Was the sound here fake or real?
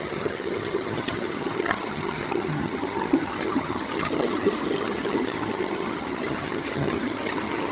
fake